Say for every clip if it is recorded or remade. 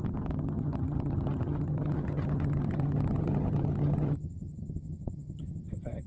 remade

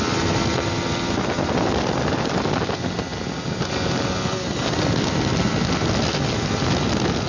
recorded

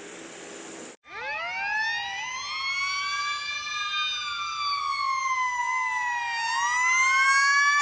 recorded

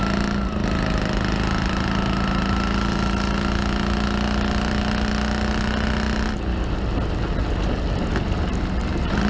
recorded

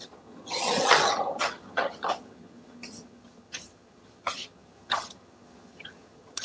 remade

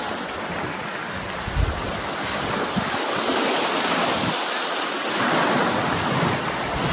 recorded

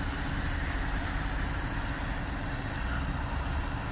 recorded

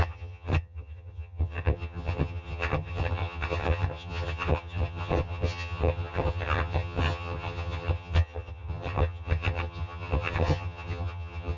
remade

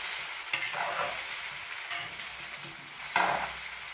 recorded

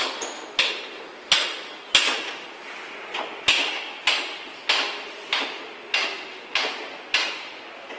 recorded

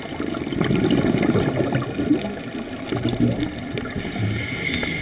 recorded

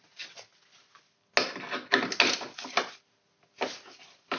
recorded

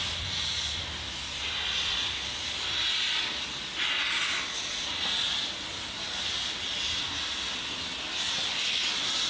recorded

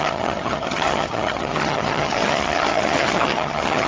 remade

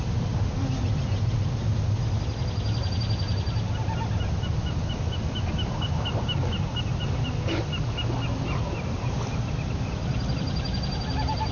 recorded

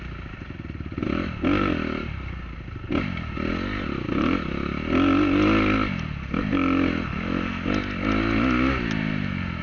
recorded